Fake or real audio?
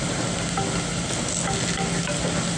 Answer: real